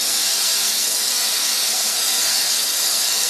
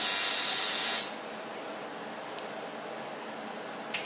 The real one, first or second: second